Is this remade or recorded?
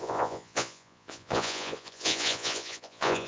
remade